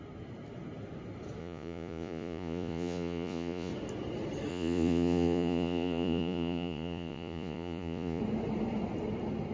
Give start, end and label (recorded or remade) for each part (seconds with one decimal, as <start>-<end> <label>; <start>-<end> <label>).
0.0-1.4 recorded; 1.4-3.7 remade; 3.7-4.5 recorded; 4.5-8.2 remade; 8.2-9.5 recorded